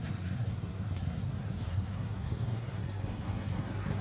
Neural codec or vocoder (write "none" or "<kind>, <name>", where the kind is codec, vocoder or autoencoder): codec, SNAC